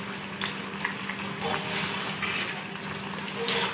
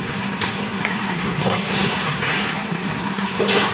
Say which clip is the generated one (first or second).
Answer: second